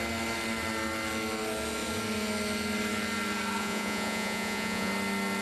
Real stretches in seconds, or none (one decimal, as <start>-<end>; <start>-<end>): 0.0-3.6; 4.9-5.4